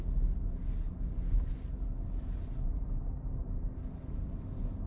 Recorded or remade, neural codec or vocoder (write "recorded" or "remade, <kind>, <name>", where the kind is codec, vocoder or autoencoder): recorded